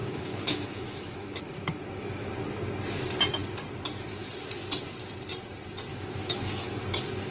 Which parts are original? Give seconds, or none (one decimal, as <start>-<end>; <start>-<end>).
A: 2.3-5.9; 6.8-7.3